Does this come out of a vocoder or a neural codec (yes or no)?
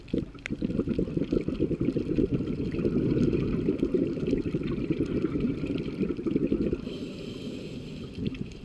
yes